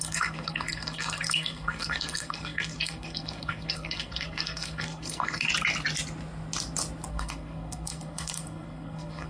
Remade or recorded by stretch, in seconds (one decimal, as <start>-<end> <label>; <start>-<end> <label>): 0.0-5.5 remade; 5.5-7.1 recorded; 7.1-9.3 remade